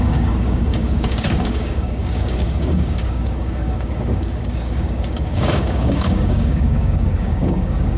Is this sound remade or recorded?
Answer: remade